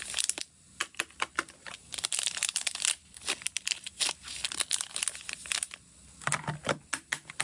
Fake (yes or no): no